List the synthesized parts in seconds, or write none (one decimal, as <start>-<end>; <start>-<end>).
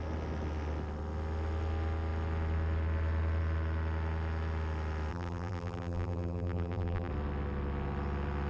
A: 5.1-7.1